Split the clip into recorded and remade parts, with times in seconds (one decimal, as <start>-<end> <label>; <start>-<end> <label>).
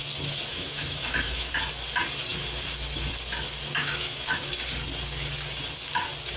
0.0-0.5 recorded; 0.5-1.5 remade; 1.5-3.8 recorded; 3.8-4.5 remade; 4.5-6.4 recorded